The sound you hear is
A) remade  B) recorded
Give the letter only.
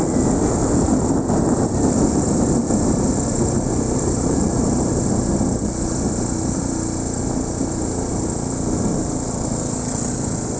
B